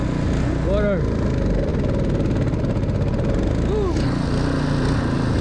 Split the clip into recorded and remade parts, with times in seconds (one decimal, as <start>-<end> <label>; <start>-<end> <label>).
0.0-5.4 recorded